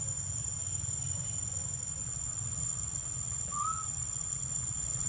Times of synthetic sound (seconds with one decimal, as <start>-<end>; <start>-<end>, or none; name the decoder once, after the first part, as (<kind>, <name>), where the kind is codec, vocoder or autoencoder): 2.0-5.1 (vocoder, WaveNeXt)